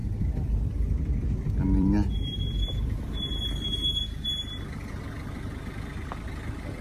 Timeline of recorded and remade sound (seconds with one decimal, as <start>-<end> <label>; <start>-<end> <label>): 0.0-3.0 remade; 3.0-6.8 recorded

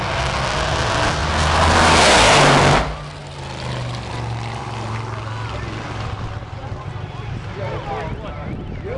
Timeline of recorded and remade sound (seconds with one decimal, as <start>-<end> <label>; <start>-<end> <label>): 0.0-9.0 recorded